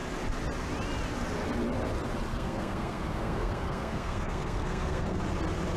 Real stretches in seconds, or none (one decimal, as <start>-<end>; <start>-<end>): 0.0-2.3; 5.2-5.8